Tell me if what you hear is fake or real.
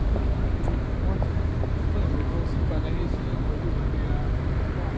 real